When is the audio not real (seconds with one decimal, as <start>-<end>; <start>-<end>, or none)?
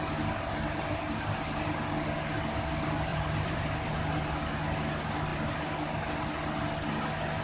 3.1-3.9